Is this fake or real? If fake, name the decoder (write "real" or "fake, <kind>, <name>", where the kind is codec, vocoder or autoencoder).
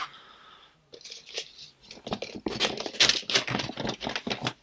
real